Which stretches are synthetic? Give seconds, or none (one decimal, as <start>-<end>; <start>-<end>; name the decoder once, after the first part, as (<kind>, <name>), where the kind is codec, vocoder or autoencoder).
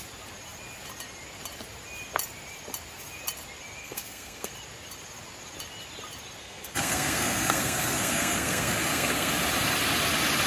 3.8-4.5 (codec, SNAC); 6.4-9.3